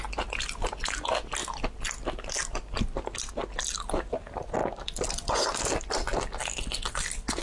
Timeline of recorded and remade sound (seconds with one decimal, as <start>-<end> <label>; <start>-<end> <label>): 0.0-7.4 recorded